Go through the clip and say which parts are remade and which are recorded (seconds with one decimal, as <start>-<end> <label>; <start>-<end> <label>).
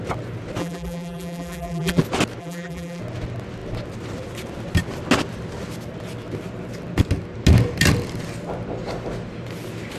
0.0-0.6 recorded; 0.6-2.0 remade; 2.0-2.4 recorded; 2.4-3.0 remade; 3.0-10.0 recorded